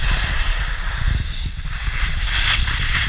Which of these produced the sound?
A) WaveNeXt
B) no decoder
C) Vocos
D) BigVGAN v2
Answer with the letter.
B